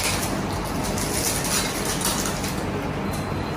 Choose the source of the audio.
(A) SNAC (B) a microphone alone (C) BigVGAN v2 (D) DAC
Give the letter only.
B